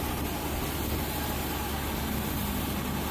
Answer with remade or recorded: recorded